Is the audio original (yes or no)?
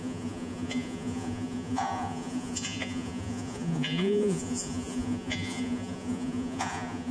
no